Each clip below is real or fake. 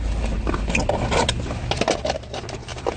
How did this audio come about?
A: real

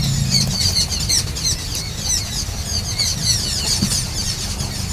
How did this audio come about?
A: real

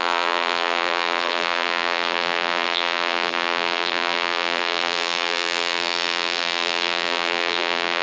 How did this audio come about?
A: fake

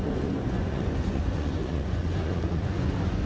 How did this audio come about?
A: fake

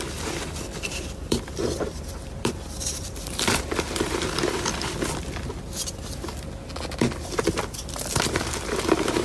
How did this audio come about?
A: fake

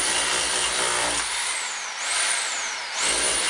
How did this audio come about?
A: real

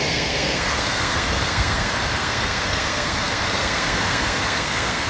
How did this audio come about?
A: fake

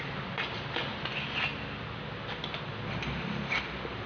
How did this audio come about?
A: real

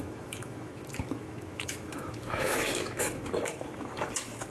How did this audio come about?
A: fake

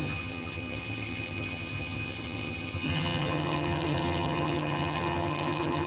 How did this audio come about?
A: fake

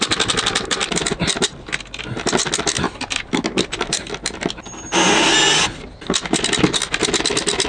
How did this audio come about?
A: real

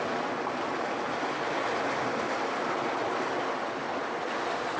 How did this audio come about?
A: real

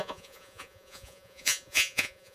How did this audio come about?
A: fake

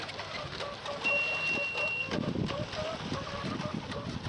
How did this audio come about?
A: real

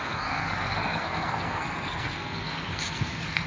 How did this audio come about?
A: fake